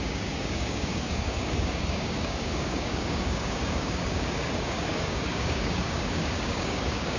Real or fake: fake